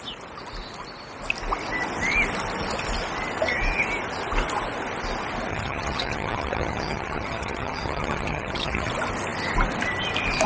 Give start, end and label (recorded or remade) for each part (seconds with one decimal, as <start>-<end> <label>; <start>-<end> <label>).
0.0-5.5 recorded; 5.5-8.9 remade; 8.9-10.5 recorded